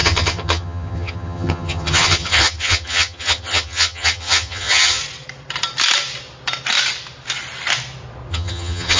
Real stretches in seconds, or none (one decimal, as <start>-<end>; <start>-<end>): 5.0-8.3

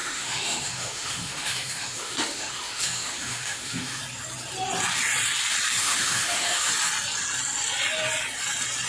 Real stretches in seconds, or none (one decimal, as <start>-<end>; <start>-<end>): 4.0-5.8; 6.7-8.9